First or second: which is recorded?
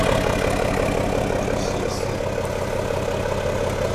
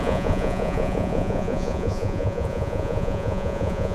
first